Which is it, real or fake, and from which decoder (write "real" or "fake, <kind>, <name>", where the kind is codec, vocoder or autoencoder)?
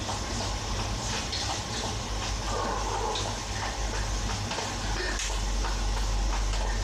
real